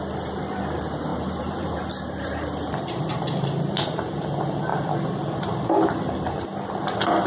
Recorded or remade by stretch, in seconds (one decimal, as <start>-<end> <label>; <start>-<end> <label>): 0.0-1.1 recorded; 1.1-3.2 remade; 3.2-7.3 recorded